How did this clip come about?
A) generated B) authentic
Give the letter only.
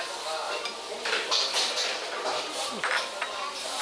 B